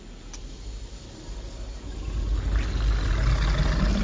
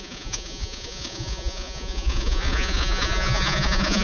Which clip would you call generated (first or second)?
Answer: second